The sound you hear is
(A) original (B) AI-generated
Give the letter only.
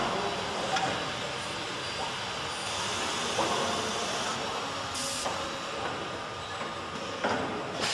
A